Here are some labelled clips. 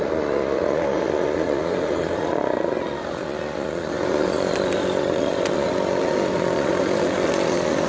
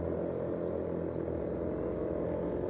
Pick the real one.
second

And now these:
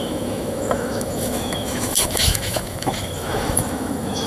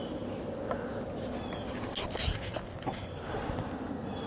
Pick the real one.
second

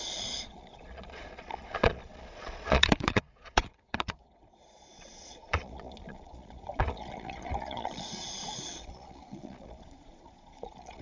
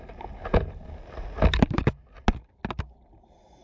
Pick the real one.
second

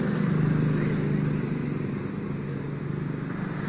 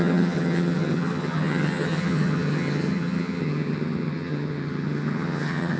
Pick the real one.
first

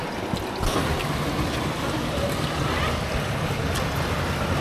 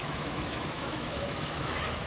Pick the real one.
first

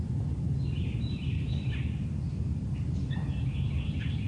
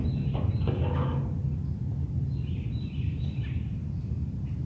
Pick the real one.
second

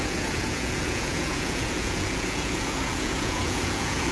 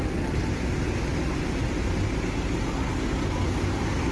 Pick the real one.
second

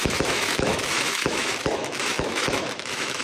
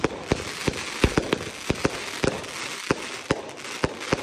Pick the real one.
second